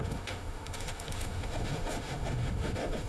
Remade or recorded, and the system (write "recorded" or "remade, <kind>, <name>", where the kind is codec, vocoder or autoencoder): remade, autoencoder, DAC-VAE